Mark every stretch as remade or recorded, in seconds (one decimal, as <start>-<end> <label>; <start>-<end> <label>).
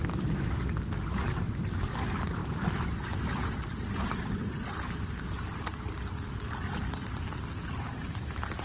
0.0-8.6 recorded